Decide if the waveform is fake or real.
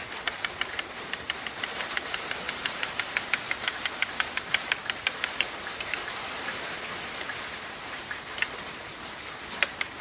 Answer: real